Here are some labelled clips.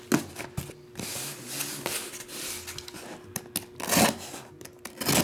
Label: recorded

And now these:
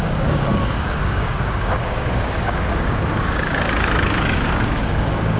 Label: remade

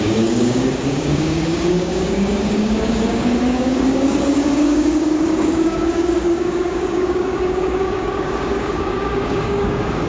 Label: remade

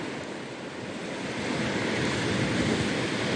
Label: recorded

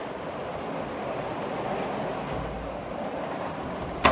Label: recorded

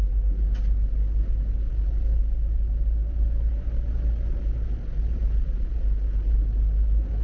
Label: recorded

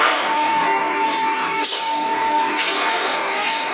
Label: remade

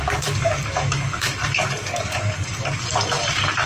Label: remade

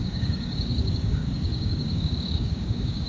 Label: remade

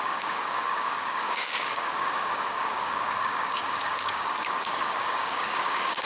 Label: remade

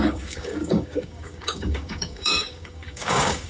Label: remade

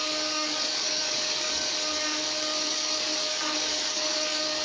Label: remade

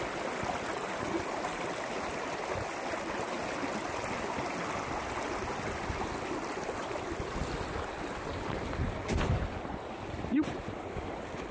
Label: recorded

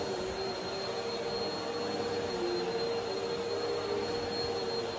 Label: recorded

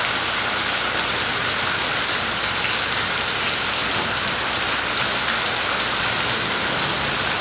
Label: recorded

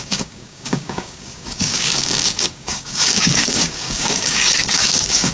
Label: remade